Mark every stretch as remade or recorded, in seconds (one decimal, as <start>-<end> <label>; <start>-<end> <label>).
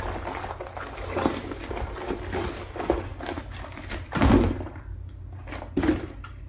0.0-6.5 recorded